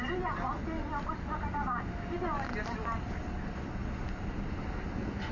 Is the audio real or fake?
real